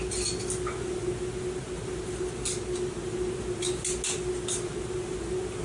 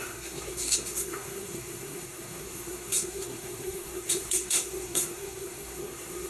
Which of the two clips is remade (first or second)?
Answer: second